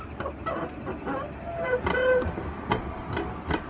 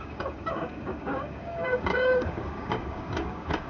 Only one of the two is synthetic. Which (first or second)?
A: second